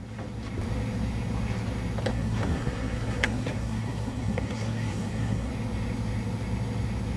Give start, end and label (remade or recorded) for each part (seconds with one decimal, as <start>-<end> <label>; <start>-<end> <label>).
0.0-2.1 recorded; 2.1-5.5 remade; 5.5-7.2 recorded

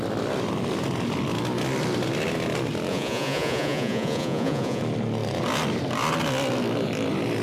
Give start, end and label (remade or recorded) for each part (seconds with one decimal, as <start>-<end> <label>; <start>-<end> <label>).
0.0-2.9 recorded; 2.9-4.8 remade; 4.8-7.4 recorded

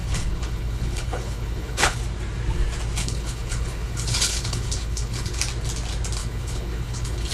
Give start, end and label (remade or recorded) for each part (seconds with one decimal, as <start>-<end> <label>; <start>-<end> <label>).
0.0-2.0 remade; 2.0-3.0 recorded; 3.0-5.4 remade; 5.4-6.2 recorded; 6.2-7.3 remade

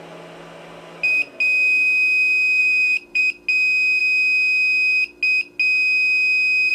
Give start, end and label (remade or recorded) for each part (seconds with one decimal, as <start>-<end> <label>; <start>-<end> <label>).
0.0-2.6 recorded; 2.6-3.2 remade; 3.2-6.7 recorded

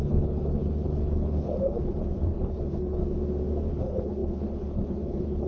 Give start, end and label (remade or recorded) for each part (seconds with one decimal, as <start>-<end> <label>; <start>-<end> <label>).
0.0-3.0 remade; 3.0-3.7 recorded; 3.7-5.5 remade